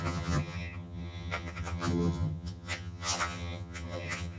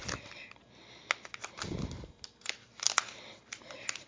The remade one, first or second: first